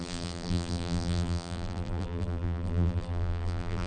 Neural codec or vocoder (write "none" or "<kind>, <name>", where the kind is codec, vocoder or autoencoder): vocoder, BigVGAN v2